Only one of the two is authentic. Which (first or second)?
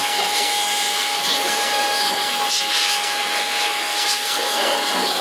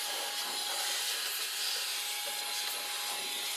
second